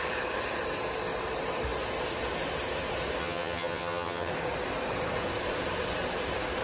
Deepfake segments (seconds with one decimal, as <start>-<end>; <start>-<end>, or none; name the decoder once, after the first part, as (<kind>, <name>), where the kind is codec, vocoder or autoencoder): 3.2-4.3 (vocoder, HiFi-GAN)